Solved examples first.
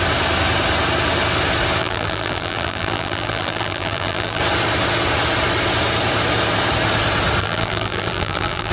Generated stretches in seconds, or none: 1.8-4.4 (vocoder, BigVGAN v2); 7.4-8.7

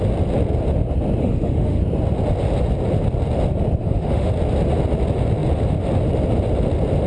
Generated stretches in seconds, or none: 1.2-1.8 (autoencoder, DAC-VAE); 3.8-4.3

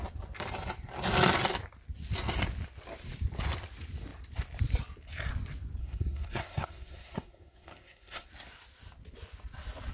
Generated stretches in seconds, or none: 5.8-8.3 (codec, SNAC)